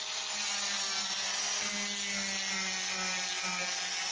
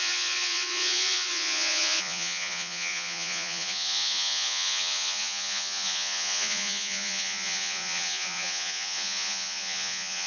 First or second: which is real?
first